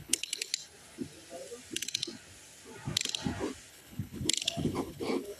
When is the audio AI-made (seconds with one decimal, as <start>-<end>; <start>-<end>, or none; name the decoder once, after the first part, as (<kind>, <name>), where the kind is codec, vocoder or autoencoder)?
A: 0.0-0.5 (codec, HILCodec); 3.7-5.4